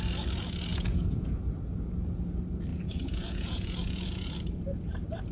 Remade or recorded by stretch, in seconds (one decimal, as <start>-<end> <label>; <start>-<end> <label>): 0.0-0.7 recorded; 0.7-1.4 remade; 1.4-2.7 recorded; 2.7-4.3 remade; 4.3-5.3 recorded